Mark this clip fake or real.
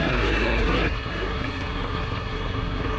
fake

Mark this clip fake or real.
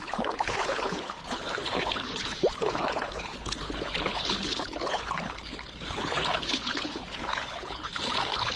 fake